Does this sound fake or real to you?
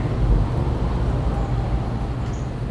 real